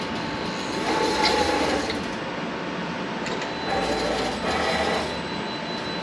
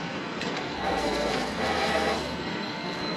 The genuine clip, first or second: first